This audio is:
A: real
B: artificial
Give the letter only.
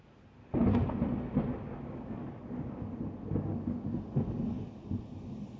A